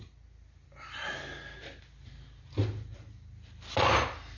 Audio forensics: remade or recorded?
recorded